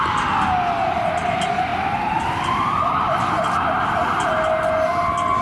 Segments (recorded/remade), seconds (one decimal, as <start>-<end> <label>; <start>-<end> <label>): 0.0-5.4 recorded